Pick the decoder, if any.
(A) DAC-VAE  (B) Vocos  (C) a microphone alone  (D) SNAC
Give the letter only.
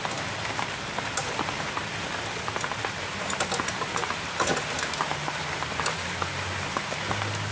C